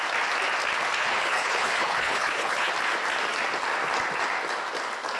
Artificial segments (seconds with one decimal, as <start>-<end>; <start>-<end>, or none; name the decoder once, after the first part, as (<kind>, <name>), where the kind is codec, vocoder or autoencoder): 1.0-2.7 (codec, HILCodec)